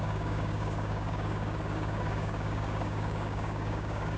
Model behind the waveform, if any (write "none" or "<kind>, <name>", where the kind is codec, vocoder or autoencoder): codec, DAC